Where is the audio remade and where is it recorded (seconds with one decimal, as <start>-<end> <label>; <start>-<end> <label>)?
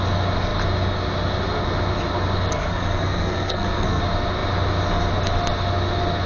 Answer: 0.0-2.5 recorded; 2.5-4.0 remade; 4.0-6.3 recorded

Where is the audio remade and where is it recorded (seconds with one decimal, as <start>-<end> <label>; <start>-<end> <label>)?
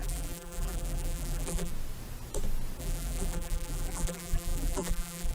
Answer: 0.0-1.7 remade; 1.7-2.8 recorded; 2.8-5.3 remade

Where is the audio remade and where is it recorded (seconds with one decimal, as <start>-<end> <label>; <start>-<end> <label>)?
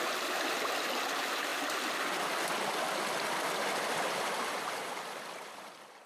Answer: 0.0-6.1 recorded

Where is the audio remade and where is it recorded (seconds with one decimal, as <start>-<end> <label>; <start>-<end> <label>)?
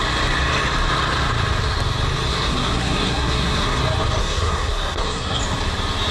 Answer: 0.0-2.3 recorded; 2.3-3.8 remade; 3.8-4.2 recorded; 4.2-5.4 remade; 5.4-6.1 recorded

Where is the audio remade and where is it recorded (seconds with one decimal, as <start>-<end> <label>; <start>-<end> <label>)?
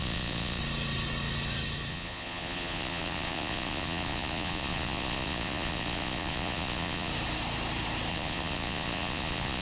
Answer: 0.0-0.6 remade; 0.6-1.9 recorded; 1.9-7.1 remade; 7.1-8.1 recorded; 8.1-9.6 remade